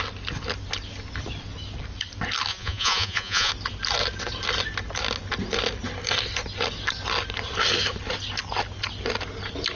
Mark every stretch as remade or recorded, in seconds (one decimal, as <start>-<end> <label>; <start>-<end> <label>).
0.0-2.5 recorded; 2.5-3.5 remade; 3.5-9.8 recorded